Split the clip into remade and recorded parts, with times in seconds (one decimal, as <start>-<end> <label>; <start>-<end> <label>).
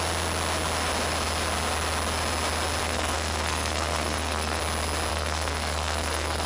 0.0-2.8 recorded; 2.8-4.6 remade; 4.6-5.1 recorded; 5.1-6.5 remade